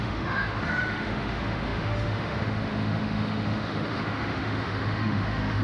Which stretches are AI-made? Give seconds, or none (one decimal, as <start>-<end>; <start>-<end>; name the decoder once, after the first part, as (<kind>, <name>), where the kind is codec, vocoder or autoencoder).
0.0-5.6 (autoencoder, DAC-VAE)